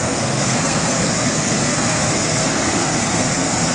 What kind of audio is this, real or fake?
fake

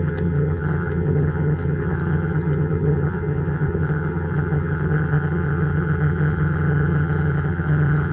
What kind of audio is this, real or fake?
fake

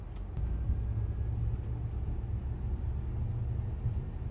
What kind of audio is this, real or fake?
real